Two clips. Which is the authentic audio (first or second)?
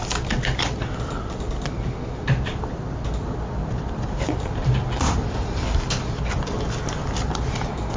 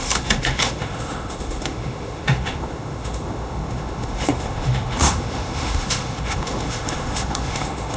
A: first